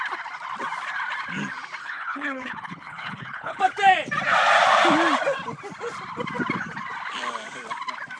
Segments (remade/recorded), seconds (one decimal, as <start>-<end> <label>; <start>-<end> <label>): 0.0-1.8 recorded; 1.8-3.6 remade; 3.6-8.2 recorded